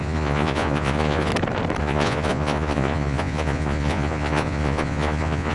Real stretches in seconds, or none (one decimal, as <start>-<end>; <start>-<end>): 1.3-1.8